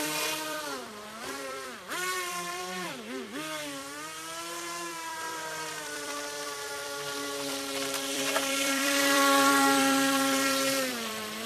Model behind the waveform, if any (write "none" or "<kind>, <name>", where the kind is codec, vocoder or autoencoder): vocoder, BigVGAN v2